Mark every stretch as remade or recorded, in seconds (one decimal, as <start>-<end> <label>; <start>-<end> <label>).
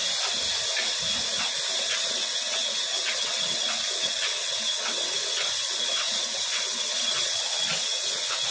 0.0-1.9 recorded; 1.9-8.5 remade